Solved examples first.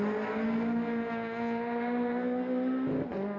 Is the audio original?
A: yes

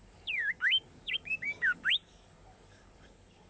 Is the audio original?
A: no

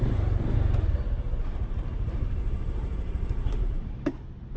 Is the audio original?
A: yes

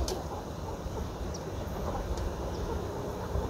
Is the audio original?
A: yes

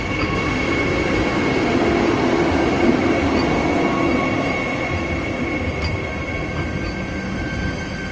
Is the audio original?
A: yes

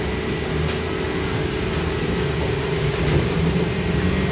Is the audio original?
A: yes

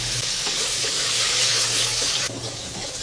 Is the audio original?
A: no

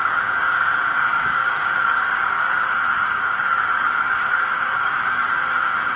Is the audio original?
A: no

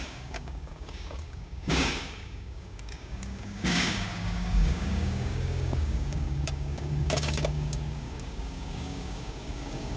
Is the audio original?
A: no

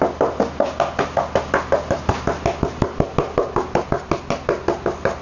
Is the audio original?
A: yes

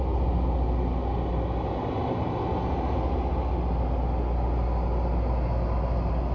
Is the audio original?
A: yes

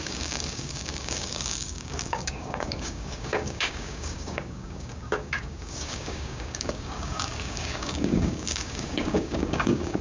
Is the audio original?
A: no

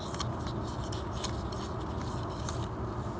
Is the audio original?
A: yes